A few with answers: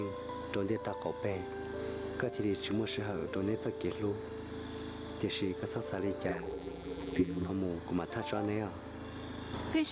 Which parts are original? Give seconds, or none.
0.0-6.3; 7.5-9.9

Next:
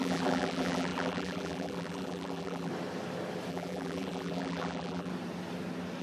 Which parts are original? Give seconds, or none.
2.7-3.5; 5.1-6.0

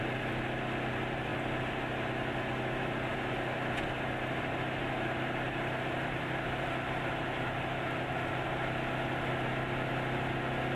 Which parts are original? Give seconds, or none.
0.0-10.8

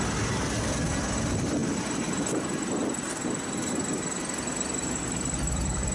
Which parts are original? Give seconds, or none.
0.0-5.9

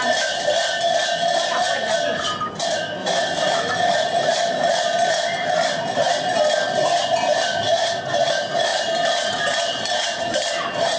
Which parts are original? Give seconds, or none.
0.0-3.0; 3.6-11.0

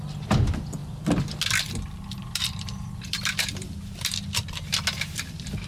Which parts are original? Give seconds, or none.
0.0-0.8; 1.3-2.2; 4.7-5.7

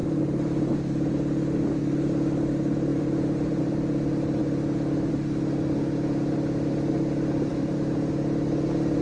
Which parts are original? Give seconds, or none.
1.1-2.9; 3.6-7.5; 8.1-9.0